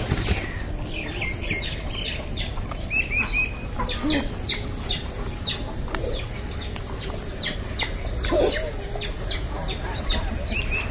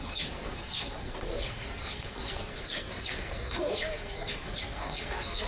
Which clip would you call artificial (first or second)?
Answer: second